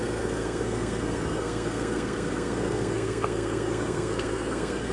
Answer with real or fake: fake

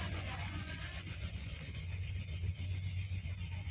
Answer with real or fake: fake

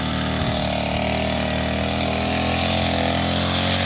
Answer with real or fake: real